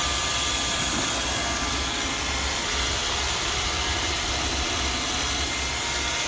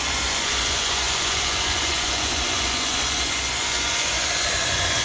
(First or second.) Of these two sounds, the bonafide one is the first